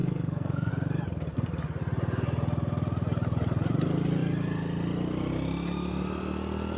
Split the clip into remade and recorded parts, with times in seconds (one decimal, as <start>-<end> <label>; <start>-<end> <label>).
0.0-0.7 remade; 0.7-6.8 recorded